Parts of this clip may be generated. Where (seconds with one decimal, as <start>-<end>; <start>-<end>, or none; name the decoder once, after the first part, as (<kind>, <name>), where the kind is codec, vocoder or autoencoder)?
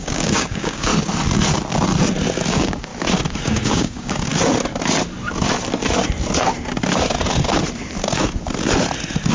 0.0-0.9 (codec, DAC); 2.5-2.9; 3.4-4.3